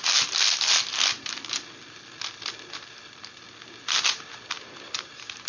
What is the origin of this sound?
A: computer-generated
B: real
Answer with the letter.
B